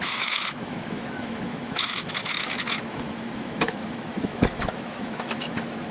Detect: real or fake fake